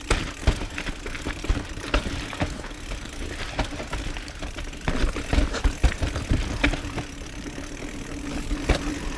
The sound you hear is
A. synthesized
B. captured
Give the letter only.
B